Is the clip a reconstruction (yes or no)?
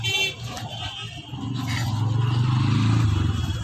no